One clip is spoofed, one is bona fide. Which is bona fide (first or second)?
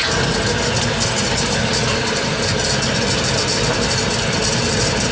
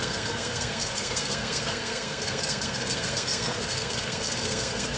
first